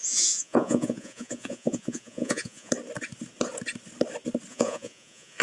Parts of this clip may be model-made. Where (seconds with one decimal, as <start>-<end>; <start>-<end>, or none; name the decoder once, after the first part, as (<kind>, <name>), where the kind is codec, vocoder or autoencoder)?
0.0-2.7 (vocoder, Vocos); 4.5-5.4